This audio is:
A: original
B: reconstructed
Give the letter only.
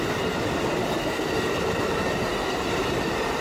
A